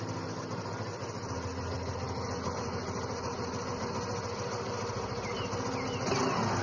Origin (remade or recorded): recorded